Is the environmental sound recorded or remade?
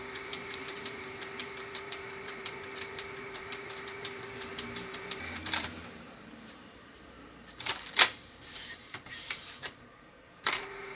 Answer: remade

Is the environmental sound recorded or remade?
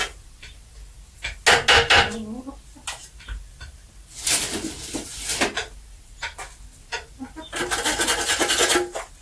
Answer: recorded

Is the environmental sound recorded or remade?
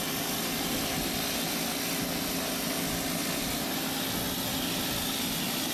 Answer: recorded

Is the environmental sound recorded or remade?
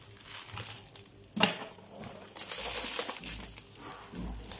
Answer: recorded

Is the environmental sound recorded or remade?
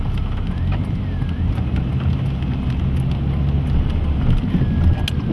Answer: recorded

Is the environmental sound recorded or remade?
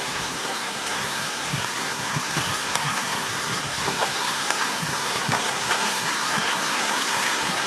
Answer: remade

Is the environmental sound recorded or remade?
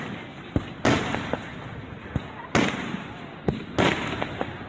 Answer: recorded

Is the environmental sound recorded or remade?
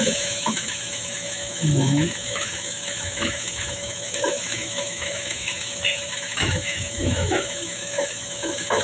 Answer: remade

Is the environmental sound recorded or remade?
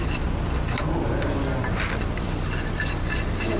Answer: recorded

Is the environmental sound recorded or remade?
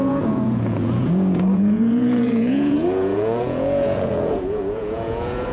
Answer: remade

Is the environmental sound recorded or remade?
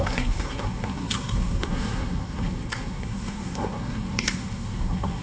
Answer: remade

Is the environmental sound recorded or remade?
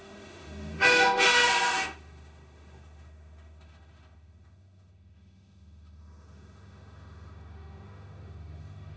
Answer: remade